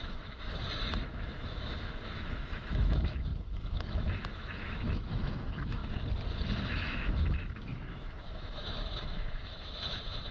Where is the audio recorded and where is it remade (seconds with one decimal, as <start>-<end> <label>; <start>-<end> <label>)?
0.0-5.8 remade; 5.8-6.7 recorded; 6.7-10.3 remade